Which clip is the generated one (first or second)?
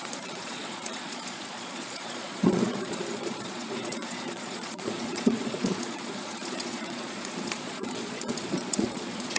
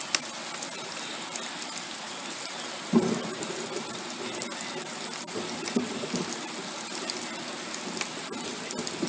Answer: first